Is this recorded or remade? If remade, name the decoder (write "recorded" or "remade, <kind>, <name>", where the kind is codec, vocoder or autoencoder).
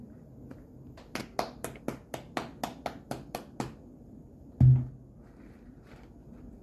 recorded